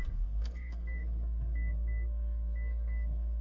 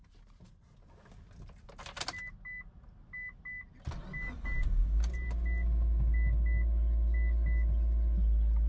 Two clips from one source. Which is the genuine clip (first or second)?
second